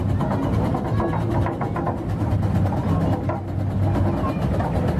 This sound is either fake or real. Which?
real